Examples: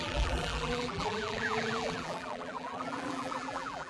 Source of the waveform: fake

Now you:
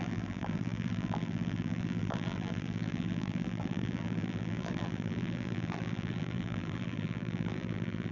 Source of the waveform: fake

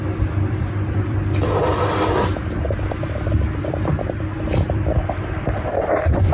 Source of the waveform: fake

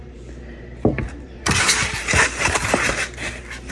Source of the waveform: fake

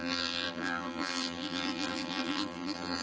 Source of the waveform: fake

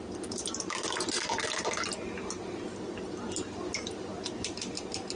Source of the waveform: real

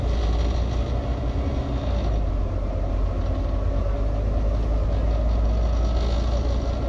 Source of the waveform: real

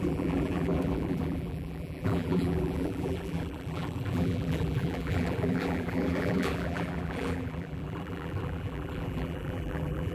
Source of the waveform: fake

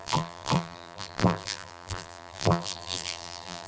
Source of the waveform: fake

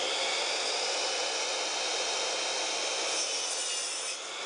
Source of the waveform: real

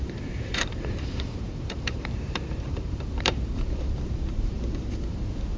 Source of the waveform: fake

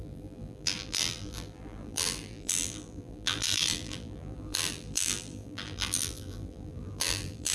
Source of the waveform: fake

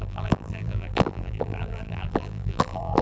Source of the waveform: fake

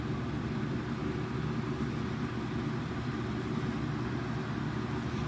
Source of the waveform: real